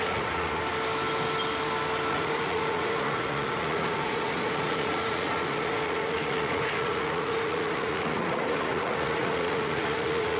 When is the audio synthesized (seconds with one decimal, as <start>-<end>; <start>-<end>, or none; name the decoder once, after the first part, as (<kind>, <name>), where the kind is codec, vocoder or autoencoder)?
0.0-0.6 (vocoder, Vocos); 2.1-10.4